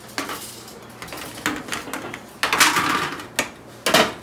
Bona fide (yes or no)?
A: yes